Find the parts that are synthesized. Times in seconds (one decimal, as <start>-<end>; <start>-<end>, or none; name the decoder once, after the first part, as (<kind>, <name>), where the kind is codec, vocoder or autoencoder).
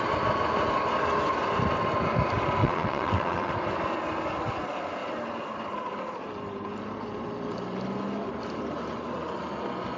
2.6-3.5 (vocoder, WaveNeXt)